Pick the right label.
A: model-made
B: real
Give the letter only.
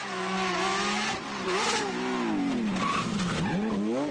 B